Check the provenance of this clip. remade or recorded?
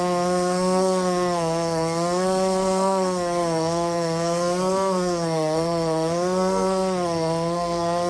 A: remade